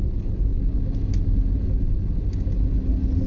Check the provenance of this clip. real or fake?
real